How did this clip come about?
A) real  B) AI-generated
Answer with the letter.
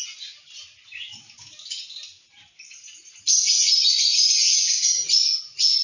A